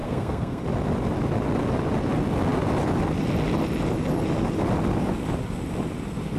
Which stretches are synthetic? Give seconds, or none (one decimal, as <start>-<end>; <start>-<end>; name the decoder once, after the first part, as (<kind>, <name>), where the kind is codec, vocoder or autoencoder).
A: 0.0-0.6 (codec, SNAC)